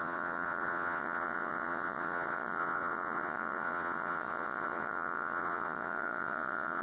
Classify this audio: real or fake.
fake